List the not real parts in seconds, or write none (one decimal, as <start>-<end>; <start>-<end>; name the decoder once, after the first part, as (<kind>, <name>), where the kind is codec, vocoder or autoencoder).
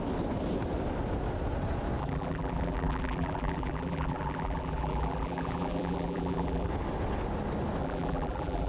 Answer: 2.0-6.7 (vocoder, BigVGAN v2); 7.8-8.7